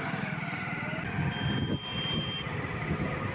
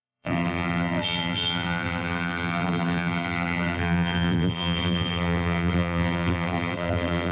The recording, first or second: first